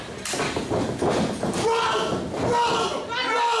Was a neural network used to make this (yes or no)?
no